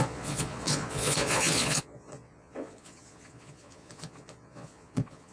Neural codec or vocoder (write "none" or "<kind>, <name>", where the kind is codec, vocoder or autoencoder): vocoder, Vocos